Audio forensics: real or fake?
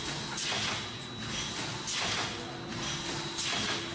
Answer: real